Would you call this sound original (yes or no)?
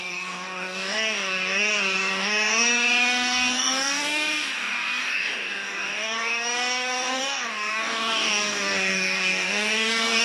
no